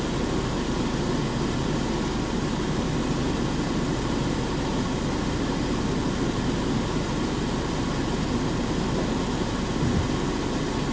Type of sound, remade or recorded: recorded